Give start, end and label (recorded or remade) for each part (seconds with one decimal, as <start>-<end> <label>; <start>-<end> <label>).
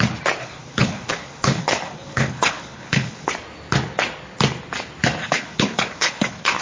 0.0-0.4 recorded; 0.4-3.3 remade; 3.3-5.2 recorded; 5.2-6.6 remade